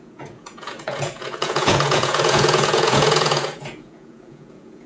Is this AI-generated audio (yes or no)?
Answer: yes